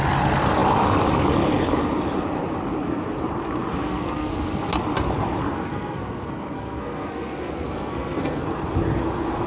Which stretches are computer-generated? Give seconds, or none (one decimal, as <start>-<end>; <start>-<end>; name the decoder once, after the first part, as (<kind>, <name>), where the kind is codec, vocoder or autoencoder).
3.8-4.7 (codec, SNAC); 5.5-8.4